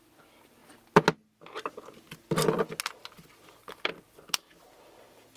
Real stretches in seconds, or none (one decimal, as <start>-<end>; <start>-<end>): 0.0-5.4